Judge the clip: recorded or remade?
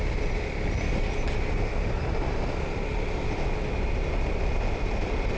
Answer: recorded